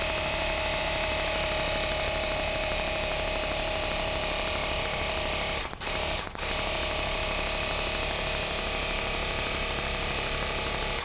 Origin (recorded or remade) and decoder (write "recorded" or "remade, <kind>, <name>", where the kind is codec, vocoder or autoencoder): recorded